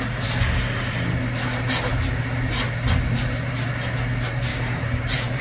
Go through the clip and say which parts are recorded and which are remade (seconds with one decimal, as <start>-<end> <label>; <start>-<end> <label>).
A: 0.0-4.5 recorded; 4.5-5.4 remade